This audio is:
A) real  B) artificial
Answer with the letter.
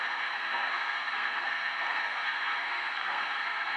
B